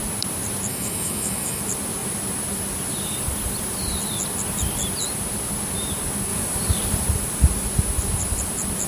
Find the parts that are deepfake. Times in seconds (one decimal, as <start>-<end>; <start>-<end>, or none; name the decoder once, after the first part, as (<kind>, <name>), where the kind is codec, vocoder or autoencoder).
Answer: 0.7-1.6 (autoencoder, DAC-VAE)